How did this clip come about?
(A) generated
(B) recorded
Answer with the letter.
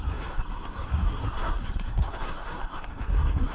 A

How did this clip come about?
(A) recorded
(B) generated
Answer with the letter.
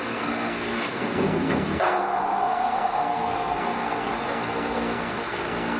B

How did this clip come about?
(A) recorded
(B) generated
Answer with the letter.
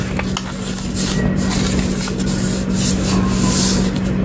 A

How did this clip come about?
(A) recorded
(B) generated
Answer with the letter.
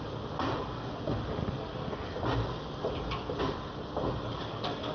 A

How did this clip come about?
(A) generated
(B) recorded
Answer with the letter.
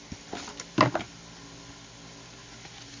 B